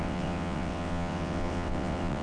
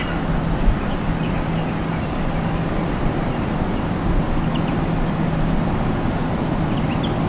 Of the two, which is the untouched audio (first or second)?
second